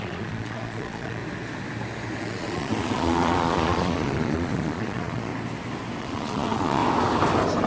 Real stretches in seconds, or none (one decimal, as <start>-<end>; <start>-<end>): 1.2-2.2; 5.3-6.0; 6.8-7.7